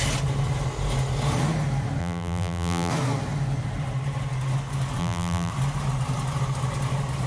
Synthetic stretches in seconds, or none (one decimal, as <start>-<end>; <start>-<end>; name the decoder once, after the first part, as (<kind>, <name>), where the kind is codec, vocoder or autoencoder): 2.0-2.9 (vocoder, BigVGAN v2); 5.0-5.5